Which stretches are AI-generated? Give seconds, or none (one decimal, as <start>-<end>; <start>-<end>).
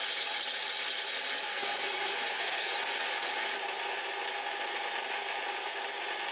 1.5-2.7